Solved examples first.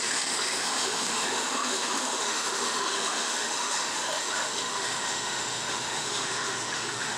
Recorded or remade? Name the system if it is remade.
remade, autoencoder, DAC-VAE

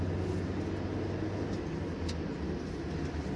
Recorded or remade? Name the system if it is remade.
recorded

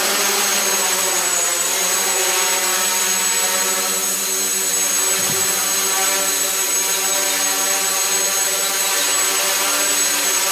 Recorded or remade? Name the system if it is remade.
recorded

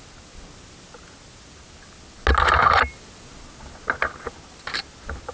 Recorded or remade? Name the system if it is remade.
recorded